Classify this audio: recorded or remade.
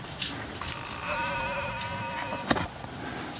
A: recorded